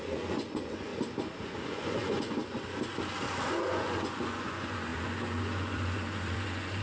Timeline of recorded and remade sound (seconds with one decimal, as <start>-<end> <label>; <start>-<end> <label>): 0.0-0.9 remade; 0.9-1.4 recorded; 1.4-2.4 remade; 2.4-3.5 recorded; 3.5-6.8 remade